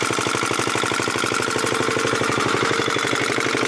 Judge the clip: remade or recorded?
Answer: recorded